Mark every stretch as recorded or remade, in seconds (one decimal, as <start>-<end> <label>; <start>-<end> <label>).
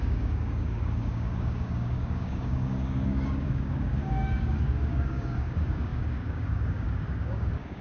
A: 0.0-7.8 remade